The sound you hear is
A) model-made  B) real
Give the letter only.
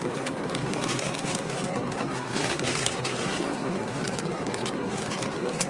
A